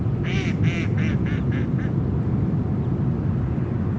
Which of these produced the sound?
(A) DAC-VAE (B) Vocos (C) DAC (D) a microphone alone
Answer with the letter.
D